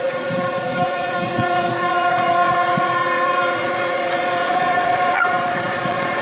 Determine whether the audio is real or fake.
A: fake